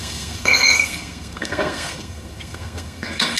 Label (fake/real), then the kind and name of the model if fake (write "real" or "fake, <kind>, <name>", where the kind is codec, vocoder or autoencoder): fake, codec, SNAC